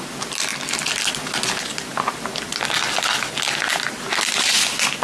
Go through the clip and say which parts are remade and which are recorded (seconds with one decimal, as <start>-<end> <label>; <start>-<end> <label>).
0.0-5.0 recorded

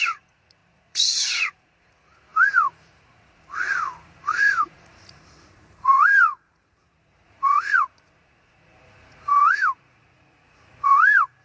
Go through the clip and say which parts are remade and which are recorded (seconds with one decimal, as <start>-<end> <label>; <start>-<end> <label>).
0.0-11.4 remade

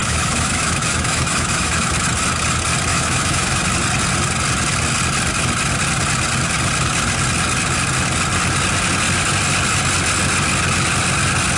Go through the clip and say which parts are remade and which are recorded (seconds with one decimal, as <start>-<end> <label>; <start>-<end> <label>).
0.0-1.9 remade; 1.9-2.9 recorded; 2.9-3.7 remade; 3.7-11.6 recorded

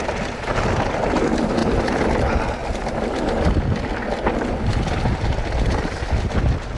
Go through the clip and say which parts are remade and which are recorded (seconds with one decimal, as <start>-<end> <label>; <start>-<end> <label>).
0.0-6.8 recorded

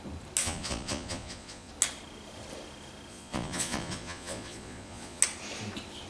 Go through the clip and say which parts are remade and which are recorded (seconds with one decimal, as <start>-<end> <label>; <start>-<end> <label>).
0.0-0.4 recorded; 0.4-1.7 remade; 1.7-3.1 recorded; 3.1-5.2 remade; 5.2-6.1 recorded

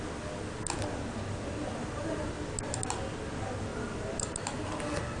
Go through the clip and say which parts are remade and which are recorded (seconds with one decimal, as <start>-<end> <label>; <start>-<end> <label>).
0.0-1.7 recorded; 1.7-2.3 remade; 2.3-3.7 recorded; 3.7-4.8 remade; 4.8-5.2 recorded

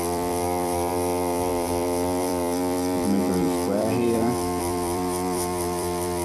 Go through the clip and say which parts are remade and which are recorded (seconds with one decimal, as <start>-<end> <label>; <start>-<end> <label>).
0.0-6.2 remade